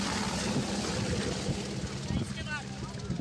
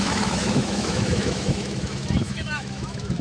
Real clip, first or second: first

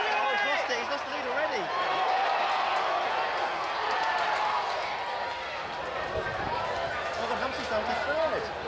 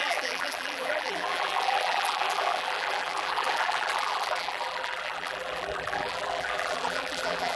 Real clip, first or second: first